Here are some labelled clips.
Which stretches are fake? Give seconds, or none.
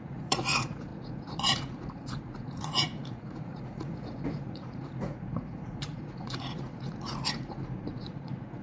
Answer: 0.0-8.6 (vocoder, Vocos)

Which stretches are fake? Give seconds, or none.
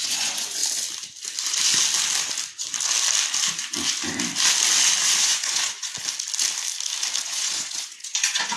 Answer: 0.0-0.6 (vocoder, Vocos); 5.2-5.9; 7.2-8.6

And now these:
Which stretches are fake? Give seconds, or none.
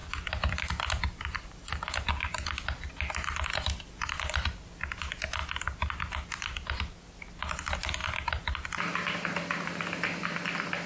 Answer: none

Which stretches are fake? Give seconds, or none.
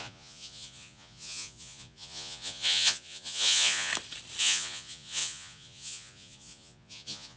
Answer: 0.0-3.9 (vocoder, Vocos); 4.4-7.4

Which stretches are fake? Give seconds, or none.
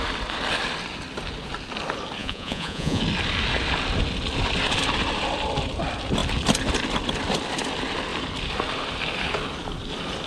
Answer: 2.2-3.0 (vocoder, Vocos)